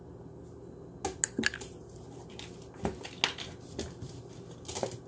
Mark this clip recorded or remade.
recorded